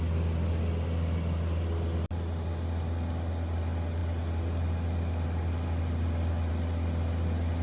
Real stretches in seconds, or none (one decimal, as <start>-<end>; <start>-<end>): 0.0-7.6